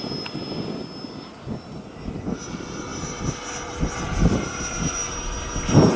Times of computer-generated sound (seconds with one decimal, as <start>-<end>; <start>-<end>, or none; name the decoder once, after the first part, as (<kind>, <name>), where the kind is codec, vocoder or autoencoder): none